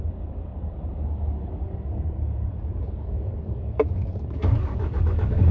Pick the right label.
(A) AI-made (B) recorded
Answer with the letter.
A